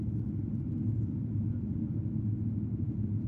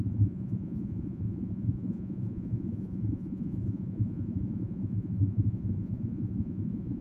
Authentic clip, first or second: first